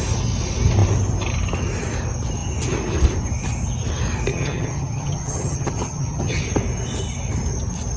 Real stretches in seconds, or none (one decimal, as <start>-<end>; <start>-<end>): 0.0-4.3; 6.4-8.0